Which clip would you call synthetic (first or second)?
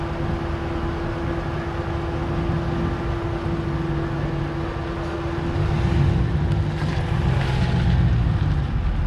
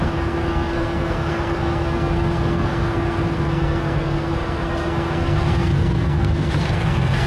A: second